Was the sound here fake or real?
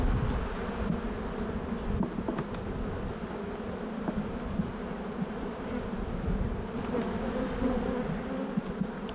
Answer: real